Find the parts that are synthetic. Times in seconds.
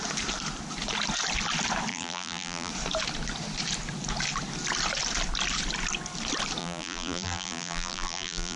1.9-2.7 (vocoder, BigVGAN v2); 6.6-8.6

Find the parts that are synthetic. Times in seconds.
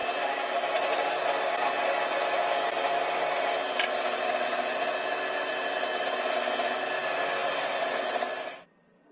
none